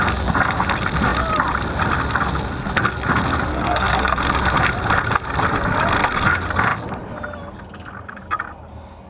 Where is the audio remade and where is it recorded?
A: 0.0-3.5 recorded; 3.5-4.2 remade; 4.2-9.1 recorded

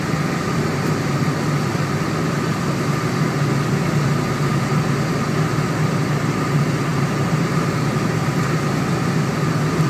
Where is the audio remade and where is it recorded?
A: 0.0-6.9 recorded; 6.9-7.8 remade; 7.8-9.9 recorded

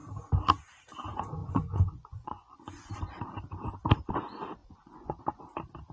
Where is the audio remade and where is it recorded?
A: 0.0-1.4 recorded; 1.4-2.9 remade; 2.9-4.6 recorded; 4.6-5.2 remade; 5.2-5.9 recorded

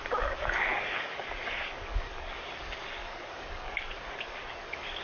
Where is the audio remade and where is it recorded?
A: 0.0-0.7 recorded; 0.7-2.5 remade; 2.5-3.0 recorded; 3.0-5.0 remade

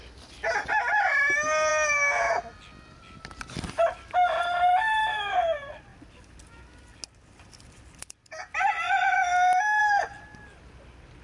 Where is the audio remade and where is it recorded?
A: 0.0-11.2 recorded

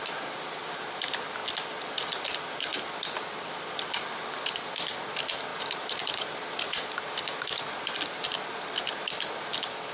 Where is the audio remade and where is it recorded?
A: 0.0-5.5 recorded; 5.5-8.0 remade; 8.0-9.9 recorded